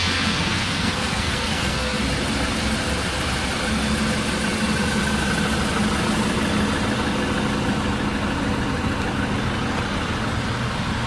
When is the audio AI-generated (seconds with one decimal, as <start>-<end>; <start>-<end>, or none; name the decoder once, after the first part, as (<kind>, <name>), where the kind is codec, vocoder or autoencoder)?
0.0-2.0 (codec, SNAC)